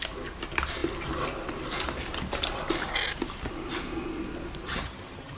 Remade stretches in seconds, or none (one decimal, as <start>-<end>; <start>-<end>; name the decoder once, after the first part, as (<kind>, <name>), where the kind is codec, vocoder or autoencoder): 4.7-5.4 (vocoder, HiFi-GAN)